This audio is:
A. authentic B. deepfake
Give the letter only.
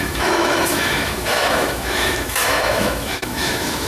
B